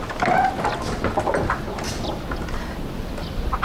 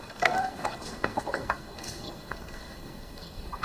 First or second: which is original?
first